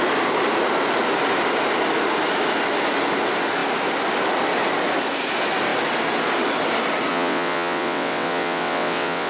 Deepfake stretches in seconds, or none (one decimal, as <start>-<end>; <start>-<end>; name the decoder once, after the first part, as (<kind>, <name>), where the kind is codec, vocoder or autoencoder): 7.1-9.3 (vocoder, WaveNeXt)